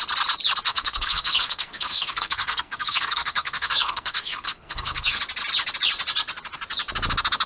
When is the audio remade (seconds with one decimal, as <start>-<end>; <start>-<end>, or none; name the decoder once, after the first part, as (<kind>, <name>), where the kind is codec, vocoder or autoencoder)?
0.7-5.2 (codec, SNAC)